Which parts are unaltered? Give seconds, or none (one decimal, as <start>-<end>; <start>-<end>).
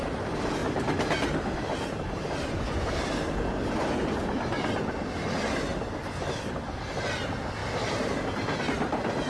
0.0-9.3